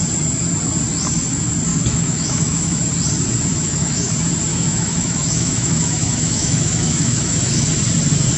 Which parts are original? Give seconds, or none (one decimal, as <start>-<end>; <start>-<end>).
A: 0.0-1.7; 2.8-3.5; 4.1-4.5; 7.7-8.4